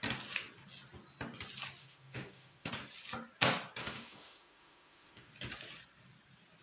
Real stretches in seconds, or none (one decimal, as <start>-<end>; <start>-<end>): 0.0-1.8; 2.7-3.8; 5.3-6.6